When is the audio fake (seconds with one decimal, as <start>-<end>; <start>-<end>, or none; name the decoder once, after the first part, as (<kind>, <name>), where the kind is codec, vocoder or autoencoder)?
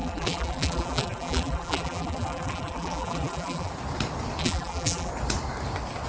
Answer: 0.0-3.7 (vocoder, BigVGAN v2); 4.4-5.1